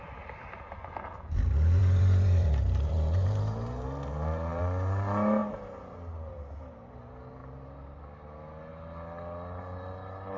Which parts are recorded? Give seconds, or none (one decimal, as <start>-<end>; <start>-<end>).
0.0-1.8; 4.6-7.4; 8.0-10.4